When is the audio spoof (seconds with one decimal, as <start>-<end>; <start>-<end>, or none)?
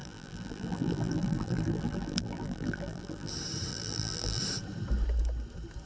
0.0-3.3; 3.7-4.4